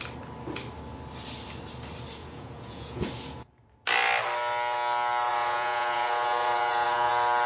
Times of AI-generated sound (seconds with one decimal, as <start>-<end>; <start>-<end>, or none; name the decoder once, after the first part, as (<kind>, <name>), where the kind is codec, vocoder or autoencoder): 2.2-3.5 (vocoder, Vocos); 5.3-7.1